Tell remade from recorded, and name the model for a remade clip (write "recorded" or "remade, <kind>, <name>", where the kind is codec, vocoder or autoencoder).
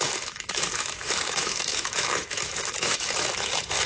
remade, autoencoder, DAC-VAE